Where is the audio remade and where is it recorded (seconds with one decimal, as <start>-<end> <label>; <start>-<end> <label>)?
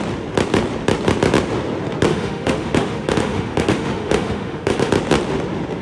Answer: 0.0-2.1 recorded; 2.1-4.9 remade; 4.9-5.8 recorded